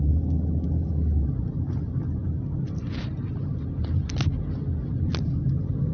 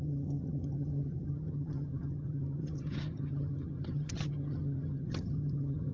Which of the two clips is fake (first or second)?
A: second